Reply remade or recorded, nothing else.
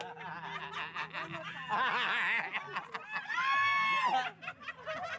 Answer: recorded